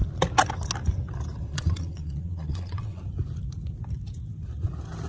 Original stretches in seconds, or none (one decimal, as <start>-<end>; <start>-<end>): 0.0-1.5; 3.0-5.1